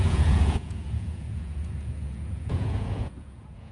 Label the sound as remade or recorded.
remade